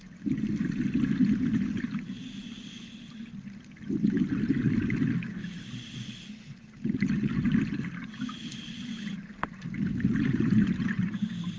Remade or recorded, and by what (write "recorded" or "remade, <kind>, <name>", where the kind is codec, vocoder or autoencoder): recorded